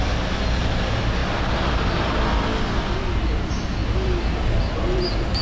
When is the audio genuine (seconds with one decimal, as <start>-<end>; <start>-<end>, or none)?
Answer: 0.0-5.4